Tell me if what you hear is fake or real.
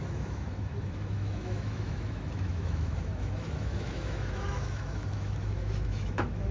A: fake